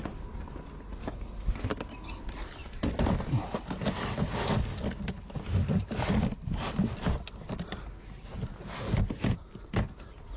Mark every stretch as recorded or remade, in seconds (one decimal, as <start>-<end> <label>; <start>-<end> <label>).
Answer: 0.0-10.4 recorded